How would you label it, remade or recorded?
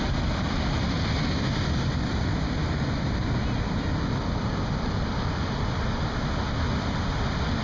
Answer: recorded